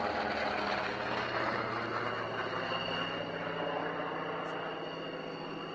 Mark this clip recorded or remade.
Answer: recorded